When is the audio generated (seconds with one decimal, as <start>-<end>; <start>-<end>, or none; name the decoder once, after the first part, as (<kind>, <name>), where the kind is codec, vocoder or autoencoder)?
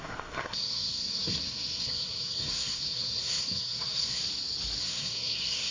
0.0-4.2 (codec, SNAC); 4.8-5.7